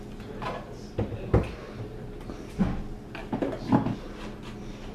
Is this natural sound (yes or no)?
yes